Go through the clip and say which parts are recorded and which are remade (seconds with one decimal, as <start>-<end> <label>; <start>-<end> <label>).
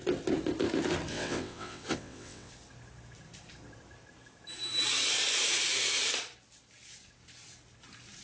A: 0.0-1.1 recorded; 1.1-2.5 remade; 2.5-8.2 recorded